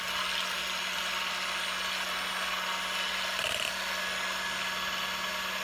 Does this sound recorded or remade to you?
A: recorded